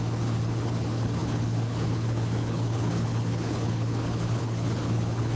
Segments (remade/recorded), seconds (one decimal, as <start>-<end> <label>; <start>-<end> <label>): 0.0-5.4 remade